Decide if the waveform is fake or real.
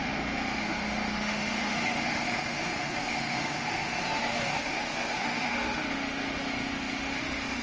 fake